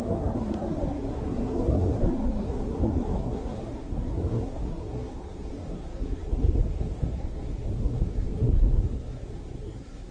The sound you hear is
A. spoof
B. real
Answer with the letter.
A